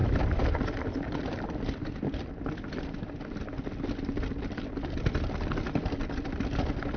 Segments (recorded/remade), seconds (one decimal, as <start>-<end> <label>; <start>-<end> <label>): 0.0-3.6 remade; 3.6-7.0 recorded